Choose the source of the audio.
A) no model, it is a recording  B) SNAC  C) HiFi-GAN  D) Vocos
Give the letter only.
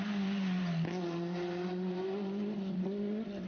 A